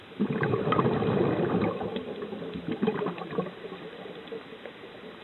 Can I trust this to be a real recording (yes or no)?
yes